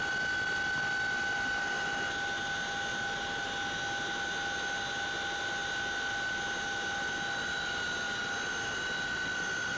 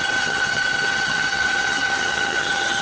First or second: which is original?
first